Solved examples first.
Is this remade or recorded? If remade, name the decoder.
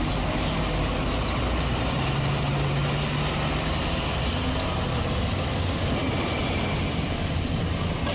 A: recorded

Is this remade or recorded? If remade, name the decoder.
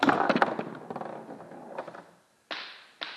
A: recorded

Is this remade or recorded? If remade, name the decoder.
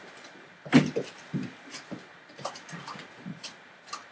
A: recorded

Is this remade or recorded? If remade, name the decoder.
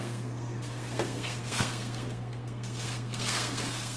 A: remade, codec, SNAC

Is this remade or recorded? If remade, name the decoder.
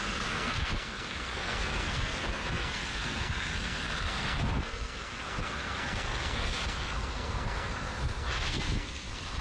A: remade, codec, SNAC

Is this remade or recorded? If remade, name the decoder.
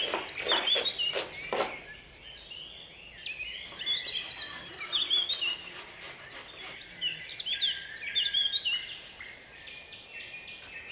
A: recorded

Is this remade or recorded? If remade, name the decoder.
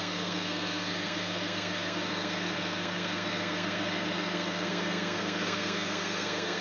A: remade, codec, SNAC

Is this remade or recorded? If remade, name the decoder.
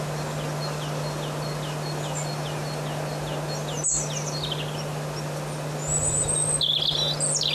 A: recorded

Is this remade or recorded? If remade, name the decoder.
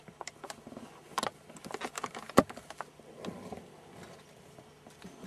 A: recorded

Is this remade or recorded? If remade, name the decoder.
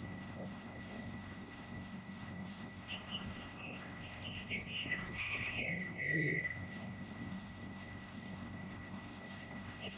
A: remade, codec, SNAC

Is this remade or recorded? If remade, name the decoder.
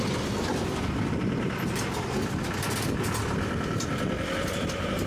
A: recorded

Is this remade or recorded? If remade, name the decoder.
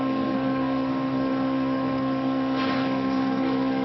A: remade, codec, SNAC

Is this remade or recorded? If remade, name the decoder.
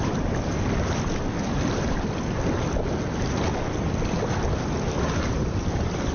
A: recorded